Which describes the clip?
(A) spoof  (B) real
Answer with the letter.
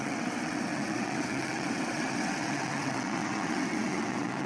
A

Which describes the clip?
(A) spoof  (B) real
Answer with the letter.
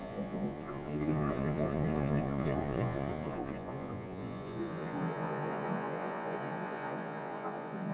A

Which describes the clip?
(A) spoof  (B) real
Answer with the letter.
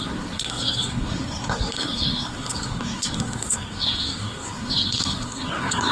A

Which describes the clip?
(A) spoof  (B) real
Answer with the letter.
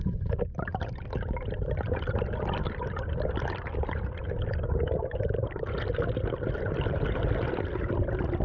B